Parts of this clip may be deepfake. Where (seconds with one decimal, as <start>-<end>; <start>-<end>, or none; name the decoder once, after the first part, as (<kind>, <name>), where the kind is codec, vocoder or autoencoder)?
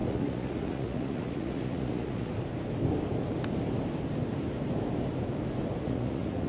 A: 0.0-2.3 (vocoder, Vocos); 5.8-6.5